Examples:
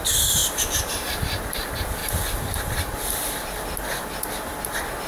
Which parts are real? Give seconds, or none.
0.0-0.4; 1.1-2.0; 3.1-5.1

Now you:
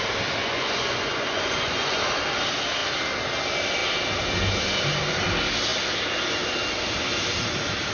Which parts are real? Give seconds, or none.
0.0-0.4; 2.0-7.9

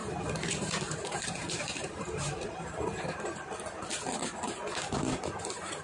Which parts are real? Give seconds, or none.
3.5-5.8

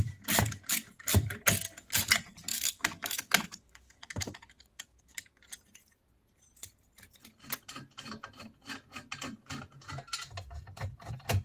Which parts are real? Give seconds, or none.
0.0-2.5; 5.4-11.4

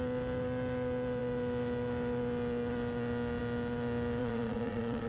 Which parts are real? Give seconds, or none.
0.0-4.2

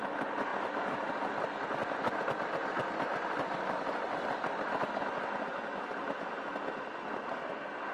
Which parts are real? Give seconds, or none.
0.0-0.5; 1.1-1.8; 3.6-5.5; 6.3-7.9

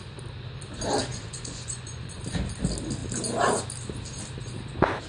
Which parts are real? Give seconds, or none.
0.0-1.1; 2.2-5.1

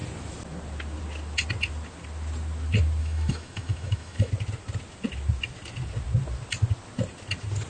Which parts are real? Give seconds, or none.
0.0-3.0; 4.3-7.7